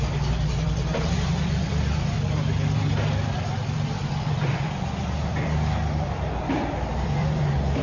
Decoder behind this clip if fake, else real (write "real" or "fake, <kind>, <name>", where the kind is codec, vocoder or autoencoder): fake, vocoder, BigVGAN v2